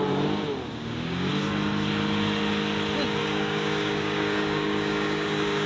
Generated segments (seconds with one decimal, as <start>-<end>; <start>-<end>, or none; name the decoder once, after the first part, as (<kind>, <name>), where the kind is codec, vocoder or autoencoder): 0.7-1.3 (codec, DAC); 3.2-5.7